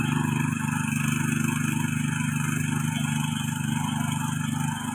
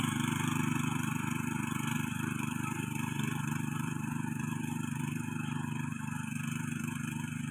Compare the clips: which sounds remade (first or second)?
second